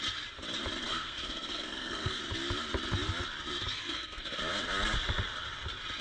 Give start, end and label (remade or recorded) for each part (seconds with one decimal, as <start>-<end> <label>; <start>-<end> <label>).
0.0-0.8 recorded; 0.8-2.2 remade; 2.2-3.8 recorded; 3.8-4.4 remade; 4.4-6.0 recorded